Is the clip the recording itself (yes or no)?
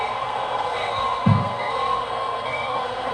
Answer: no